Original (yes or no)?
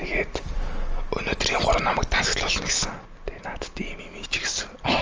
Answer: yes